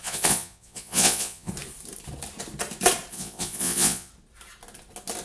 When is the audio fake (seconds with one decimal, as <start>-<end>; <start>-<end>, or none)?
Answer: 0.0-1.5; 3.1-4.1